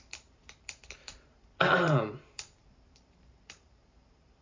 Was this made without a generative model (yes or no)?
no